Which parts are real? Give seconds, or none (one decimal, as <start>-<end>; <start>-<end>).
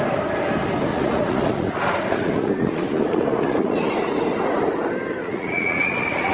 0.0-0.9; 3.9-5.2